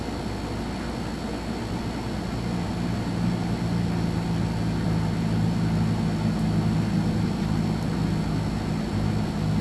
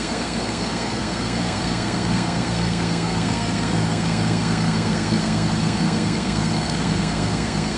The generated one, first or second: second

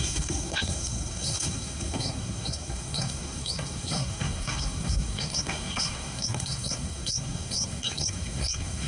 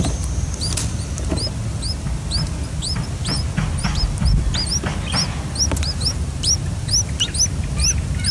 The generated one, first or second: first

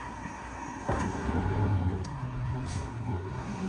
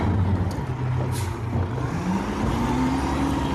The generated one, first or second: first